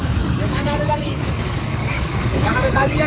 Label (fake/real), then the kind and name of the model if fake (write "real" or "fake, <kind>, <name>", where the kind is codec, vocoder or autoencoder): fake, codec, DAC